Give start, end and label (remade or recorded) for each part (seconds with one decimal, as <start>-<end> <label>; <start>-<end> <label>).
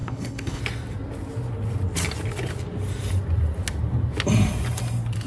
0.0-0.6 remade; 0.6-5.3 recorded